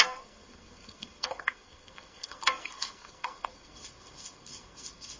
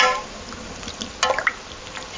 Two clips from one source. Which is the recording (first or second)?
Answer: second